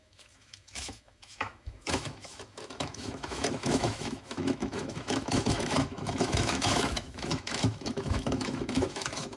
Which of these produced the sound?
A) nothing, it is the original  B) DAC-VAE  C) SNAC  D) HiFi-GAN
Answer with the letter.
B